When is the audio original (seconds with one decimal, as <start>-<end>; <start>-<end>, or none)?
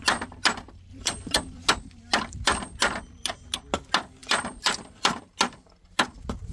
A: 0.0-0.9; 1.7-4.2; 5.2-6.5